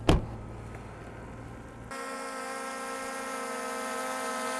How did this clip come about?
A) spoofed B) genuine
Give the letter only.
B